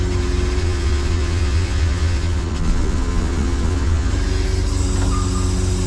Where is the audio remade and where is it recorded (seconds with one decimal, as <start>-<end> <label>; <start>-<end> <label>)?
0.0-0.6 recorded; 0.6-4.1 remade; 4.1-5.9 recorded